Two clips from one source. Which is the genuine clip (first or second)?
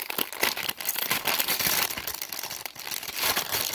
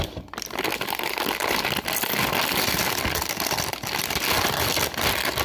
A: second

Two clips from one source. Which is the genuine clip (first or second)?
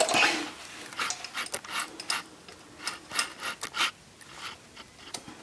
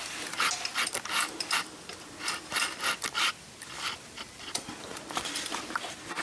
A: first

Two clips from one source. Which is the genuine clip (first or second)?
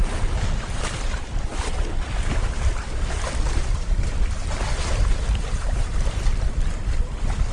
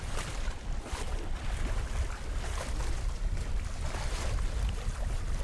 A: second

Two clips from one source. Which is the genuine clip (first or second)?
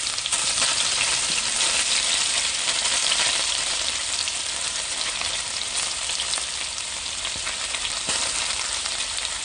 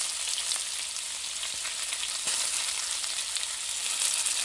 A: second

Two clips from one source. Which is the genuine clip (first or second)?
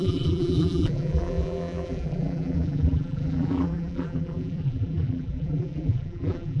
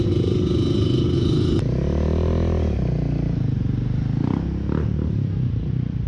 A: second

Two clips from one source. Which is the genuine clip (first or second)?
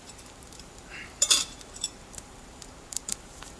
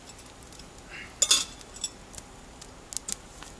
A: second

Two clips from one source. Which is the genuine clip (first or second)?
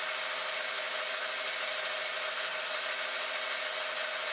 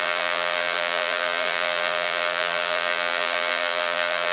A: first